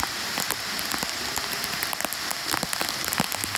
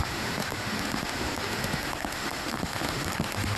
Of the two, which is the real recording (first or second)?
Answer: first